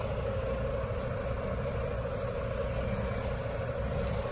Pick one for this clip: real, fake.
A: real